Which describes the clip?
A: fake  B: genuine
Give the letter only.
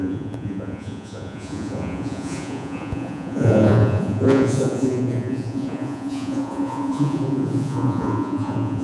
A